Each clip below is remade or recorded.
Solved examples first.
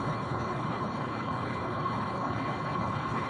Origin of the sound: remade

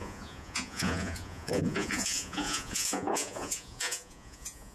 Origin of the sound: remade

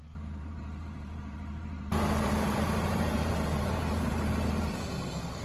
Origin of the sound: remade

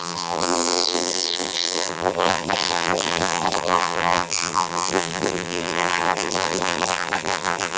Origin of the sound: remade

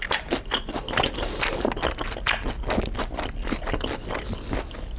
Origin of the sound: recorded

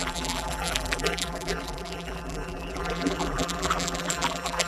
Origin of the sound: remade